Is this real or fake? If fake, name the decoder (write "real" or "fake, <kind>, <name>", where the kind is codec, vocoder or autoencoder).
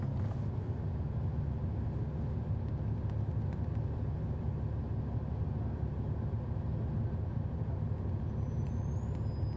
real